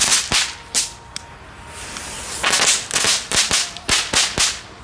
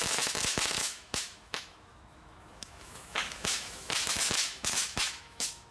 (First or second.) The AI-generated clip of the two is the second